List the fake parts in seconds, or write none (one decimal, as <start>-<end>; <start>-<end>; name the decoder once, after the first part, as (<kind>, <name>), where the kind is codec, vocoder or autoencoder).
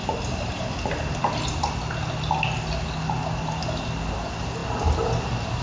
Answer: none